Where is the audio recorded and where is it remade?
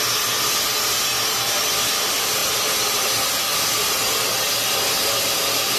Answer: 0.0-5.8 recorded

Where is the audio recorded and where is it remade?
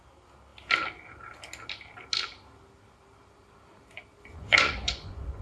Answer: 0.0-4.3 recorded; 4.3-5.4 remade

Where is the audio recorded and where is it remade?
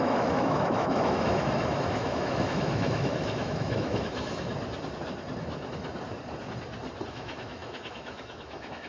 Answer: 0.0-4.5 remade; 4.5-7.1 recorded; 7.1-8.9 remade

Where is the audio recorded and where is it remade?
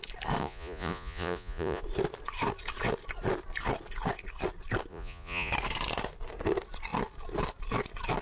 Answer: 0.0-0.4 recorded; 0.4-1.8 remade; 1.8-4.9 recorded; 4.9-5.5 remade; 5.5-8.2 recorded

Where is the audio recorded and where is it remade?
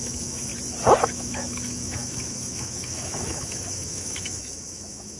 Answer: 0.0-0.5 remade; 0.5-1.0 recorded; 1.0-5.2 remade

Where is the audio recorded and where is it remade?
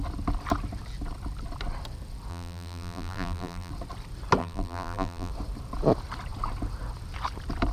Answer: 0.0-2.3 recorded; 2.3-3.7 remade; 3.7-4.4 recorded; 4.4-5.3 remade; 5.3-7.7 recorded